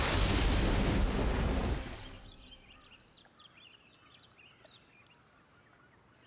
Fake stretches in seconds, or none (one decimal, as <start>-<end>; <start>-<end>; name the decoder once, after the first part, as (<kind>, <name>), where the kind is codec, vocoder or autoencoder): 1.6-2.5 (vocoder, BigVGAN v2)